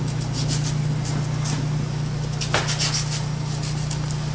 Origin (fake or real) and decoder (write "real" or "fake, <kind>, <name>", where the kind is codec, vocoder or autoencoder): real